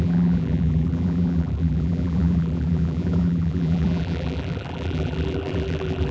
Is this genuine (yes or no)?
no